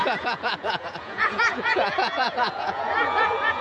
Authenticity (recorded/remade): remade